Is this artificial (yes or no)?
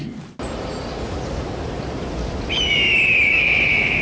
no